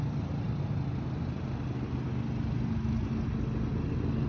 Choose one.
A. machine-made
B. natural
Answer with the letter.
B